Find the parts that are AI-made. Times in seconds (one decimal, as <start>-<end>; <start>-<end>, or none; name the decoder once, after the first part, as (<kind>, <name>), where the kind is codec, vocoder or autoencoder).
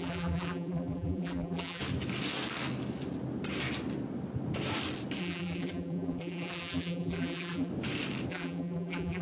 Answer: 0.0-1.8 (vocoder, BigVGAN v2); 5.2-7.7; 8.3-9.2